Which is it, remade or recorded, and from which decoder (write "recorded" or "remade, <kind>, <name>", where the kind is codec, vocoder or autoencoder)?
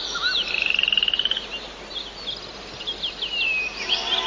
remade, vocoder, BigVGAN v2